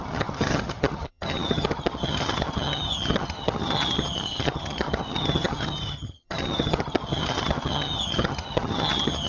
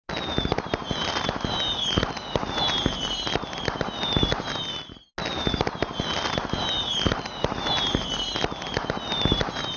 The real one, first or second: second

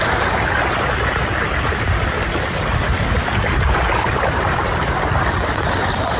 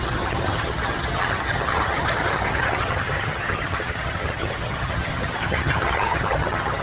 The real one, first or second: first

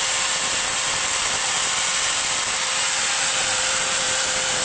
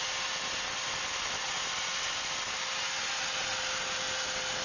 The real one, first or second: second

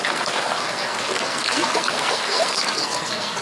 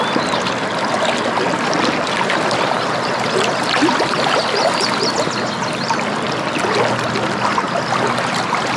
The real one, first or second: second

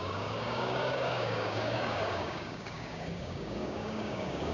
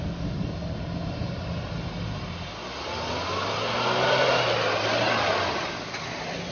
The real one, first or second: second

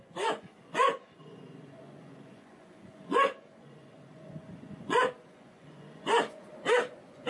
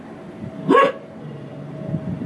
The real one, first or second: second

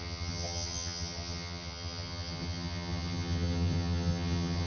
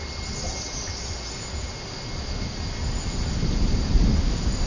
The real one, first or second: second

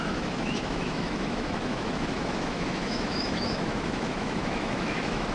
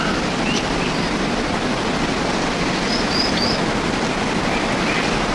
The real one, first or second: second